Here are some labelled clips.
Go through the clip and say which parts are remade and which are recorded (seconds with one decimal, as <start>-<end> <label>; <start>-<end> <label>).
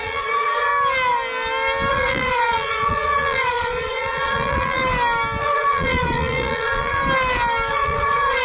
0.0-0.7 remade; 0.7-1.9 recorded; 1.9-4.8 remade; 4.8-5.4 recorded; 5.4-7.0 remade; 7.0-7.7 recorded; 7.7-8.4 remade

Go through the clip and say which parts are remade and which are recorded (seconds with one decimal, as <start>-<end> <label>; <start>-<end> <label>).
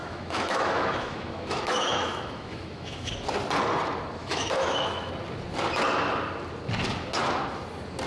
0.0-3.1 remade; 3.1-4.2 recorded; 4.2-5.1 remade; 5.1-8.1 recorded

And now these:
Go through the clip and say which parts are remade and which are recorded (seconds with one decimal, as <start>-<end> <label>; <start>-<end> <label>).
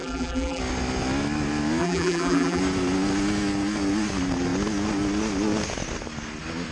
0.0-0.6 remade; 0.6-1.8 recorded; 1.8-2.6 remade; 2.6-6.7 recorded